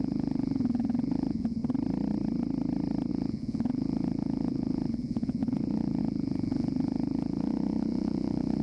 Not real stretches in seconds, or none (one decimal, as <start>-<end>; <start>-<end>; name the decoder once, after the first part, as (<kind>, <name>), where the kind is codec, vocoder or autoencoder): 0.0-1.6 (vocoder, Vocos); 3.1-8.6